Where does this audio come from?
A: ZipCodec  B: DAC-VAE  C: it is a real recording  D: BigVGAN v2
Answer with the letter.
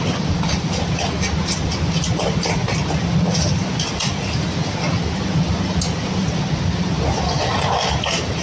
C